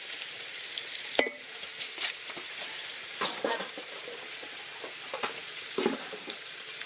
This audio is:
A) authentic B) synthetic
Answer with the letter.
B